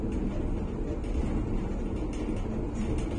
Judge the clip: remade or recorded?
recorded